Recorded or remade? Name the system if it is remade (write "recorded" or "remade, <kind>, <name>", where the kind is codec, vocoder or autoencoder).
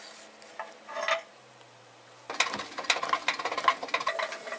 recorded